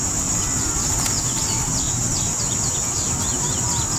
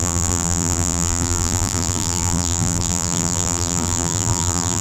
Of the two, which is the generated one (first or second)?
second